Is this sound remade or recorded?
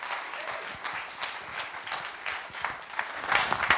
recorded